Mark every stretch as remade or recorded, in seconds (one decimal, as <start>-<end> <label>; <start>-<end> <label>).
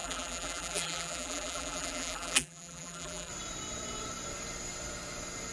0.0-3.3 remade; 3.3-5.5 recorded